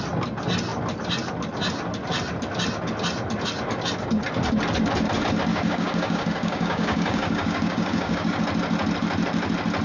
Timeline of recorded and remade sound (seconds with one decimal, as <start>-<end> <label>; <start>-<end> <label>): 0.0-5.5 recorded; 5.5-8.4 remade; 8.4-9.8 recorded